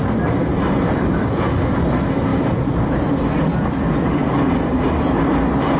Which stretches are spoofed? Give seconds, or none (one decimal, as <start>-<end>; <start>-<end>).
none